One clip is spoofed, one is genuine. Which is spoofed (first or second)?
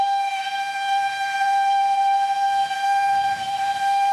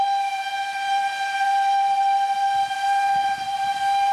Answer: first